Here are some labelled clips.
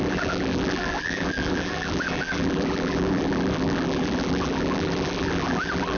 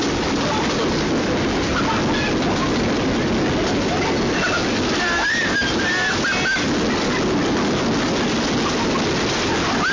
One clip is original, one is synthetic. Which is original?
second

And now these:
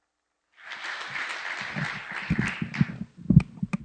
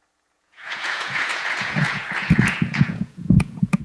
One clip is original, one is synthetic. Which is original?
first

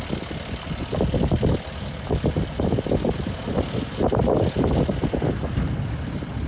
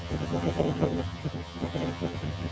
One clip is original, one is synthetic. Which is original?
first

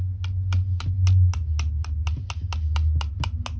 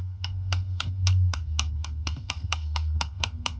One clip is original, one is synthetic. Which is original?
first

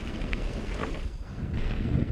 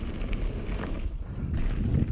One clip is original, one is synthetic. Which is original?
second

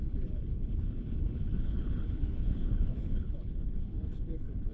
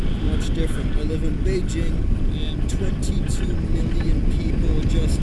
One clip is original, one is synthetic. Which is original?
second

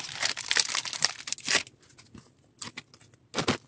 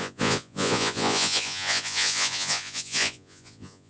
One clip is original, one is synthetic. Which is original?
first